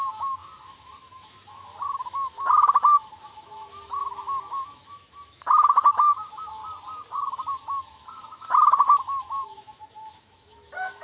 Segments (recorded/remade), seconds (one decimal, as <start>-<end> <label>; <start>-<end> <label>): 0.0-6.6 remade; 6.6-7.5 recorded; 7.5-11.0 remade